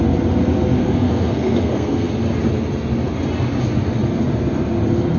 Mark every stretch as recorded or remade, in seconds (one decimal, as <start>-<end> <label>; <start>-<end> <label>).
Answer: 0.0-0.8 recorded; 0.8-2.1 remade; 2.1-5.2 recorded